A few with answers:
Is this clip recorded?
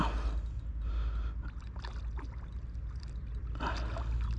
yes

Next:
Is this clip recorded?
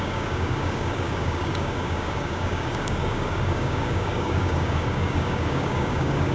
no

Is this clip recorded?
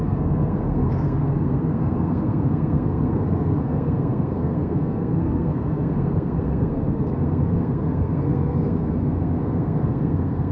no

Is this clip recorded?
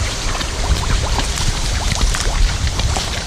no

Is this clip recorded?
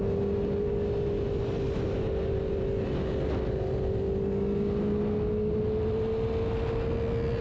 yes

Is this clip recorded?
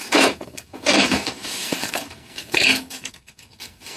no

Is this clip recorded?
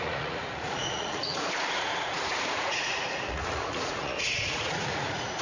no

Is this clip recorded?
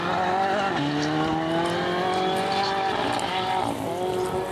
yes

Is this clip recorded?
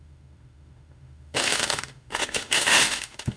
no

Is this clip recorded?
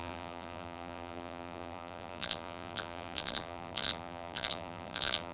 no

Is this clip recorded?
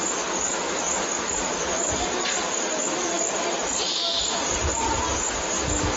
yes